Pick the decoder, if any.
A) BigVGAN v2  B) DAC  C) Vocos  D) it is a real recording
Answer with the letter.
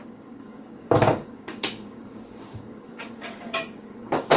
B